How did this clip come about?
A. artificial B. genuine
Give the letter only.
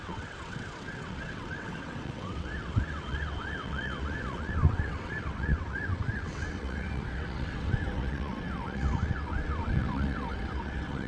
A